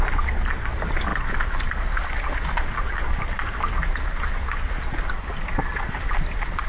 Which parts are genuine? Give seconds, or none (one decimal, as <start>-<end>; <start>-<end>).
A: 0.0-6.7